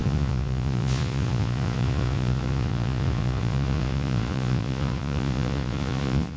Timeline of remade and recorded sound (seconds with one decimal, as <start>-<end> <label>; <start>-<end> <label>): 0.0-6.4 remade